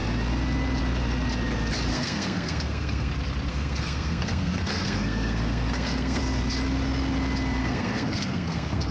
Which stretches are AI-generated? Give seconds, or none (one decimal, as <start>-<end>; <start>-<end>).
1.9-3.1; 3.5-6.2; 7.6-8.9